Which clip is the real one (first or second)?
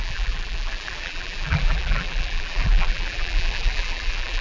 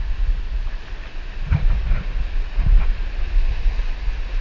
second